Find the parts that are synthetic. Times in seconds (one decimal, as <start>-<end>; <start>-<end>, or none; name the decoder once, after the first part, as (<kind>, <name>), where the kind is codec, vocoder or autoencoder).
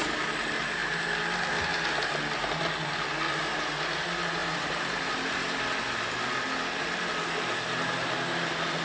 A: none